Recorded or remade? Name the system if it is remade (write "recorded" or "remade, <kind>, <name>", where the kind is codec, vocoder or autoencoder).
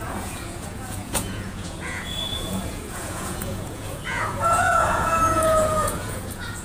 remade, vocoder, Vocos